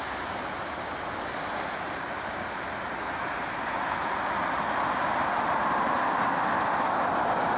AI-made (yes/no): no